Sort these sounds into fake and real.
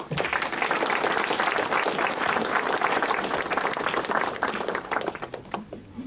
real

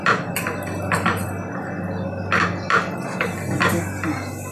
real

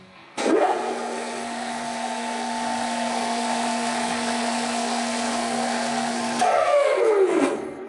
fake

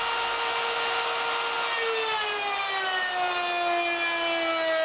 real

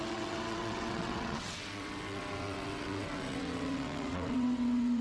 fake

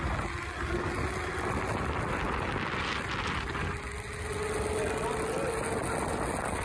real